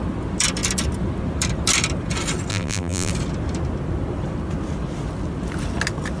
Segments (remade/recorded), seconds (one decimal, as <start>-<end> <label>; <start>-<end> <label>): 0.0-2.5 recorded; 2.5-3.1 remade; 3.1-6.2 recorded